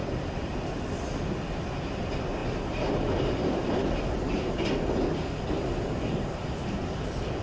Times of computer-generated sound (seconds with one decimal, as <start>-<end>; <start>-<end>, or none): none